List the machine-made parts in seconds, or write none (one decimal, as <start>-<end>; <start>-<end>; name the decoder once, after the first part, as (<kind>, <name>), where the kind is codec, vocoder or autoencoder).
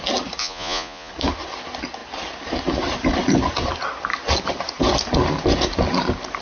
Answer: 0.4-1.1 (vocoder, Vocos)